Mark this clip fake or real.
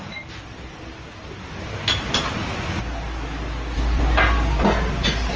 real